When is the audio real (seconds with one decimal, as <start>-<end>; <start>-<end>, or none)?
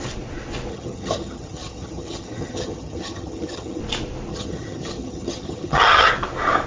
0.0-0.7; 3.8-4.3; 6.1-6.7